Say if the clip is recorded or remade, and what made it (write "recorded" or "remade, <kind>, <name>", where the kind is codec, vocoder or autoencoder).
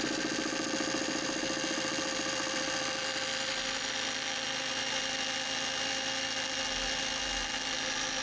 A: recorded